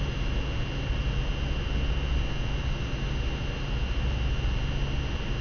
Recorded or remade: recorded